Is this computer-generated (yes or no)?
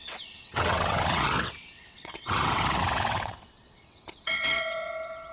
yes